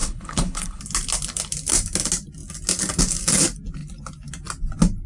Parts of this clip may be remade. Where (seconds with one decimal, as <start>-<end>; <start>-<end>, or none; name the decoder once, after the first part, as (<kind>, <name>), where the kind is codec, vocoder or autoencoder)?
0.0-0.8 (codec, HILCodec)